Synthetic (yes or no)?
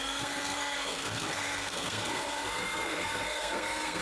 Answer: yes